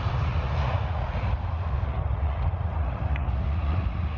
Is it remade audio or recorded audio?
remade